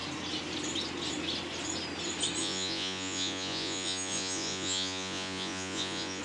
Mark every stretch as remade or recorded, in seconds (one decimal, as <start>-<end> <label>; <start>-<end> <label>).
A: 0.0-2.4 recorded; 2.4-6.2 remade